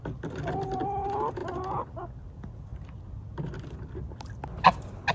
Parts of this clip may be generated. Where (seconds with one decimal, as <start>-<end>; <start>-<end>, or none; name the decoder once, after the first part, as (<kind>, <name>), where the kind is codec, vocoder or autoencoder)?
none